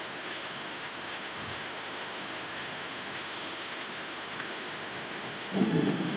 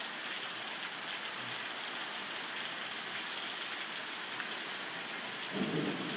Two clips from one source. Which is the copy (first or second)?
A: first